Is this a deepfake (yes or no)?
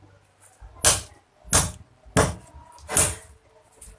no